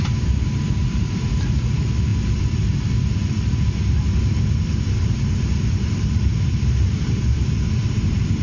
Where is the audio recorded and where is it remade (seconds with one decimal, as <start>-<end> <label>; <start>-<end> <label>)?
0.0-8.4 remade